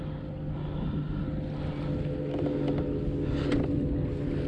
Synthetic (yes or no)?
no